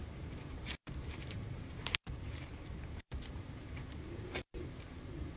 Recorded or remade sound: remade